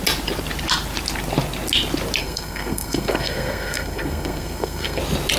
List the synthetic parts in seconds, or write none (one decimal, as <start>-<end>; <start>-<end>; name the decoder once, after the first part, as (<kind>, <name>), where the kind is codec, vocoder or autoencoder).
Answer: 2.2-5.0 (codec, SNAC)